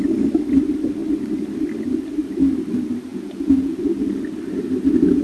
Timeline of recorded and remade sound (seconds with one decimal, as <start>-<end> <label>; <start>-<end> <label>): 0.0-3.1 recorded; 3.1-3.8 remade; 3.8-5.2 recorded